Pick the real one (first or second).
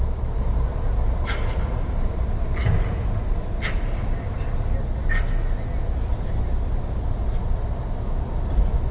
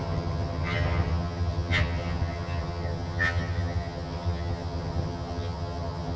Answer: first